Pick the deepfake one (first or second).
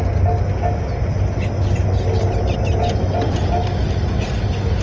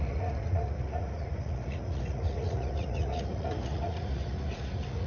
second